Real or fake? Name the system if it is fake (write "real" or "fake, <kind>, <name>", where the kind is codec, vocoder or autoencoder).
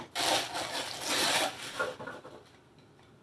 real